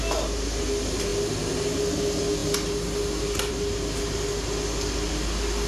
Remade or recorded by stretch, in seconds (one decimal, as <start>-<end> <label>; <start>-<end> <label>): 0.0-5.7 recorded